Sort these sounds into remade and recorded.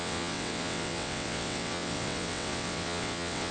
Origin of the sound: remade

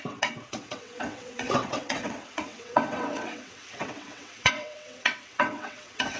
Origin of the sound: remade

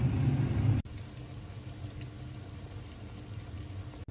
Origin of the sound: recorded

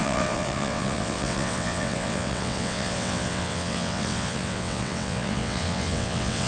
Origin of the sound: remade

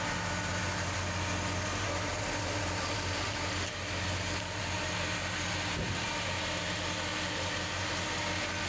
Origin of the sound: recorded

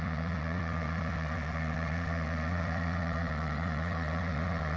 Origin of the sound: remade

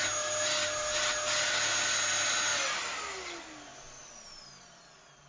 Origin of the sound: recorded